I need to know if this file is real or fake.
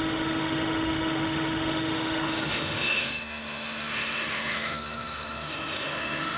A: fake